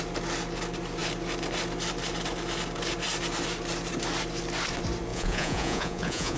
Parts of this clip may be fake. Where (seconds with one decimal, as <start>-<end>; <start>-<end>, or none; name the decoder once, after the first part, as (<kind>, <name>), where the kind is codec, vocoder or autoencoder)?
5.1-6.4 (vocoder, Vocos)